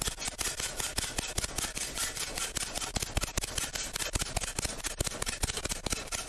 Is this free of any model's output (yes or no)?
yes